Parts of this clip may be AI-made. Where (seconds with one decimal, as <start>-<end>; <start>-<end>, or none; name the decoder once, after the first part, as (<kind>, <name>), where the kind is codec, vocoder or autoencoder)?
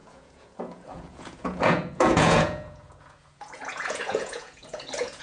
0.0-5.2 (vocoder, Vocos)